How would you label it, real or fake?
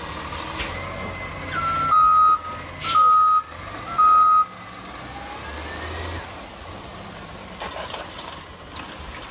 real